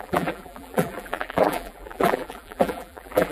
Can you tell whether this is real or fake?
fake